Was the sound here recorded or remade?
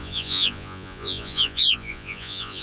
remade